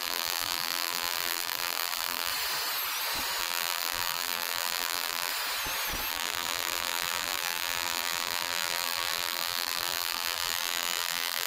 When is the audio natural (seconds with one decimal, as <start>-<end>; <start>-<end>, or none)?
2.3-3.4; 5.3-6.1